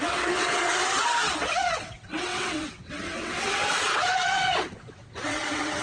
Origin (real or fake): fake